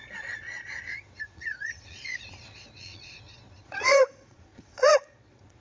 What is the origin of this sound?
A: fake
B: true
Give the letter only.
A